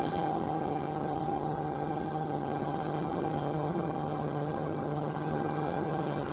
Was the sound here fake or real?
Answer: fake